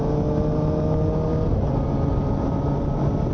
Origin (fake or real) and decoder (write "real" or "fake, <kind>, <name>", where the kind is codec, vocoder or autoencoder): real